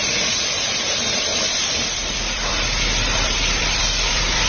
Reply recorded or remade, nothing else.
remade